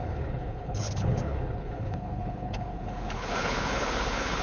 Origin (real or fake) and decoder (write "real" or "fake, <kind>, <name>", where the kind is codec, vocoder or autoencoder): fake, codec, HILCodec